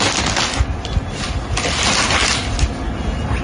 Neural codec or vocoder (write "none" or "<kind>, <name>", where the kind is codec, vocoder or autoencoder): none